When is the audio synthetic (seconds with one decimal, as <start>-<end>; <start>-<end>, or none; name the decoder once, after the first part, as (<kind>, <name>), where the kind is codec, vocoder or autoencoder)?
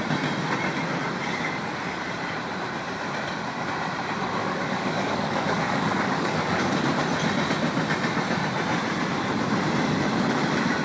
4.4-6.8 (codec, DAC)